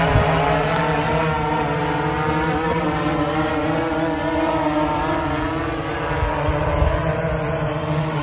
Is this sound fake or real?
real